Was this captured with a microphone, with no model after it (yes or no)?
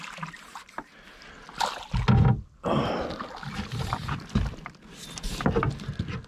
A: yes